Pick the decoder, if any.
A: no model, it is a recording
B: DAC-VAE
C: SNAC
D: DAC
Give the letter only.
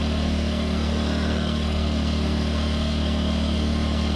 C